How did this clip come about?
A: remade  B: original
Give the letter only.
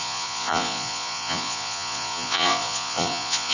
A